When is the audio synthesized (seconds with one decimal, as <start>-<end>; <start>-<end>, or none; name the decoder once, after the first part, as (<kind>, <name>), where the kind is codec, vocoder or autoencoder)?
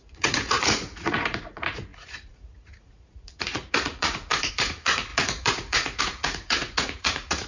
0.0-7.5 (vocoder, Vocos)